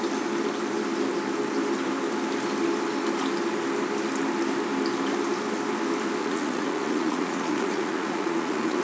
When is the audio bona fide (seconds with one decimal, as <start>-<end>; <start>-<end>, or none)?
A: 0.0-6.2